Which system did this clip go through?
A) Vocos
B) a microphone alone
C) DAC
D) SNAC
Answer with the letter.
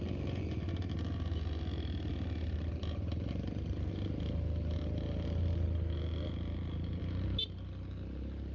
B